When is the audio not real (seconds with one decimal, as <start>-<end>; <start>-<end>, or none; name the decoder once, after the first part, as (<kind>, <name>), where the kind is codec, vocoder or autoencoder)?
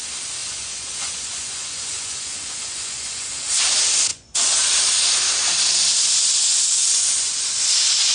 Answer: 0.4-3.3 (vocoder, Vocos); 4.1-4.7; 6.8-7.5